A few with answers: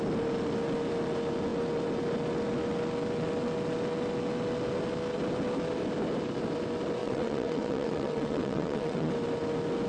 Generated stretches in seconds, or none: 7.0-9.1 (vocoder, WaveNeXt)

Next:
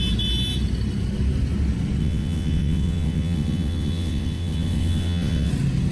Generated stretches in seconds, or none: 2.0-5.5 (vocoder, WaveNeXt)

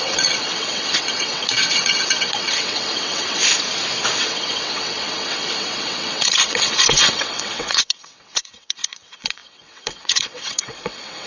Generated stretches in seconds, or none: 0.0-3.4 (vocoder, WaveNeXt); 4.2-11.3

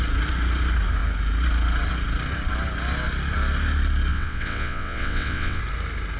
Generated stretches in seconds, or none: 4.1-5.6 (vocoder, WaveNeXt)

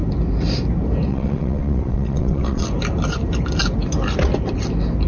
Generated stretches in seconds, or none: 1.1-2.7 (vocoder, WaveNeXt)

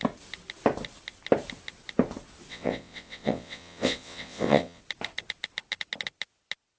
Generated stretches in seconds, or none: 2.5-4.8 (vocoder, WaveNeXt)

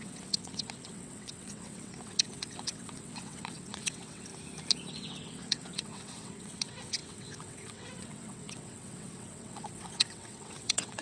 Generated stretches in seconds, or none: 0.0-4.3 (vocoder, WaveNeXt); 4.9-11.0